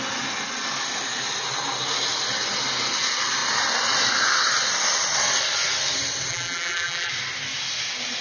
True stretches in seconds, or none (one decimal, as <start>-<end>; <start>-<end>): 0.0-6.3; 7.1-8.2